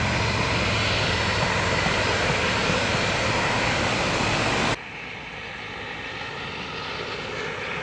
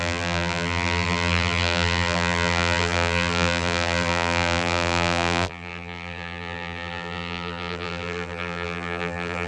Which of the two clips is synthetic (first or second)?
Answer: second